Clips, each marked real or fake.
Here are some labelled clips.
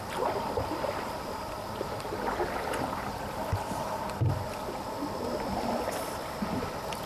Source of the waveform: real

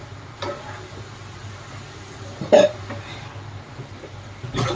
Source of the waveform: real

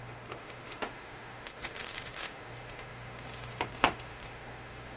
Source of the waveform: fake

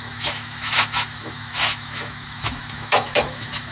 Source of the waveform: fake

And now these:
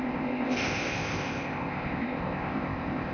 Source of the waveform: fake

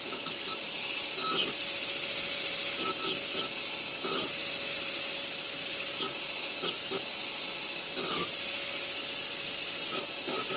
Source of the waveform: real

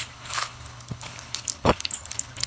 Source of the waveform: fake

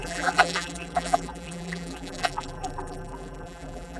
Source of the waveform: fake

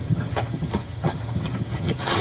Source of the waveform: fake